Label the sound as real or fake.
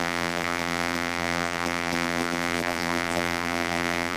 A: fake